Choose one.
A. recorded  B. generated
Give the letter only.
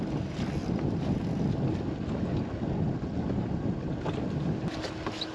A